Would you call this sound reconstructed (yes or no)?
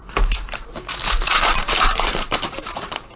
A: yes